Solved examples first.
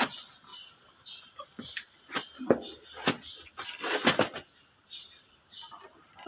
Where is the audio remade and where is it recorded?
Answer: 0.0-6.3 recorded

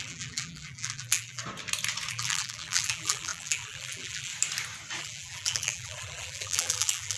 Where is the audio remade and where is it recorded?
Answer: 0.0-1.4 remade; 1.4-2.1 recorded; 2.1-4.3 remade; 4.3-5.0 recorded; 5.0-7.2 remade

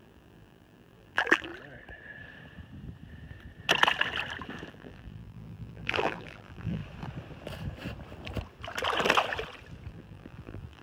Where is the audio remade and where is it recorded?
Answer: 0.0-1.5 remade; 1.5-4.7 recorded; 4.7-6.8 remade; 6.8-9.9 recorded; 9.9-10.8 remade